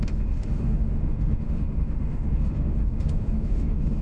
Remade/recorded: remade